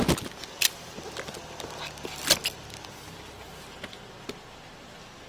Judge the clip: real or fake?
real